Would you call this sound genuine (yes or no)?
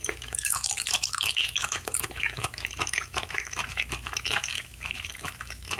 no